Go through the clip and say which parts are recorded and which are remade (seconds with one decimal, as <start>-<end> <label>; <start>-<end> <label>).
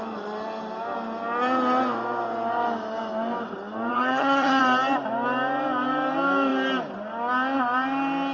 0.0-3.9 recorded; 3.9-4.6 remade; 4.6-8.3 recorded